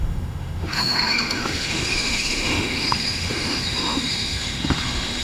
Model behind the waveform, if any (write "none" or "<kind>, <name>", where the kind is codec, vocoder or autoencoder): autoencoder, DAC-VAE